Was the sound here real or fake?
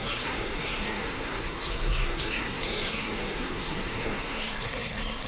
fake